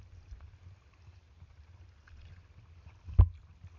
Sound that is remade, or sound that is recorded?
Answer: recorded